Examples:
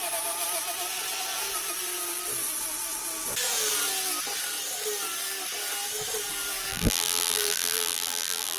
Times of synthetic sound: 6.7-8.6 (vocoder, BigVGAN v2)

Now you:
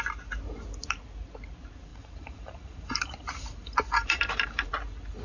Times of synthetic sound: 1.9-4.7 (vocoder, BigVGAN v2)